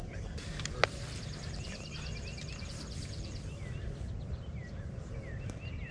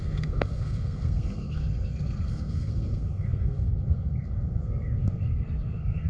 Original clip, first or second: first